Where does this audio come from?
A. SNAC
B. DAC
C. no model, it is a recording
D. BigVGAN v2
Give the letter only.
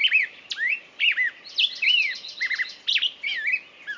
C